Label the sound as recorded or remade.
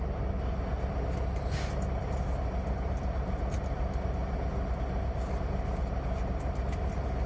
recorded